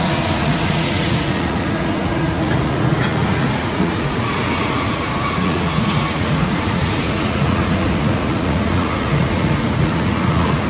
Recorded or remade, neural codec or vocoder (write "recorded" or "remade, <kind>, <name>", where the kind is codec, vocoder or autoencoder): remade, vocoder, Vocos